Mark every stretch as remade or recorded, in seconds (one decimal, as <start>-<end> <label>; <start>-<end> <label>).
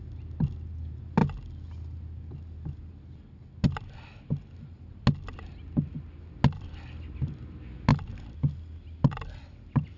0.0-10.0 recorded